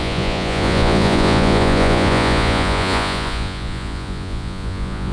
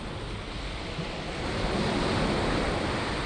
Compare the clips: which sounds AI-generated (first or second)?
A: first